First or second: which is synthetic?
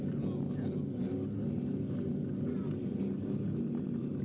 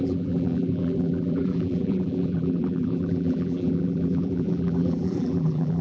second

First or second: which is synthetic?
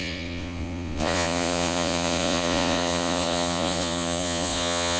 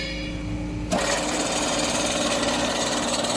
first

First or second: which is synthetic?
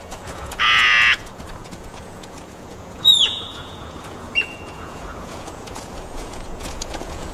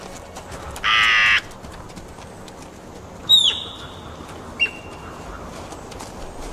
first